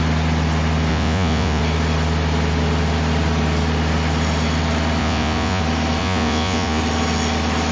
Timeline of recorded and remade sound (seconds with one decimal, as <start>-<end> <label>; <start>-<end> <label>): 0.0-0.9 recorded; 0.9-1.6 remade; 1.6-5.0 recorded; 5.0-5.6 remade; 5.6-6.0 recorded; 6.0-6.8 remade; 6.8-7.7 recorded